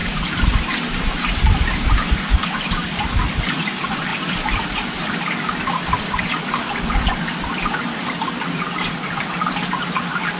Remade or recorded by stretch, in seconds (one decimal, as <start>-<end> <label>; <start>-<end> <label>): 0.0-4.1 recorded; 4.1-6.2 remade; 6.2-7.1 recorded; 7.1-9.4 remade; 9.4-10.4 recorded